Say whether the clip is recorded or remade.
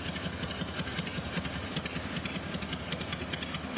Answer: recorded